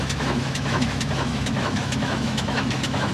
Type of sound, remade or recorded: remade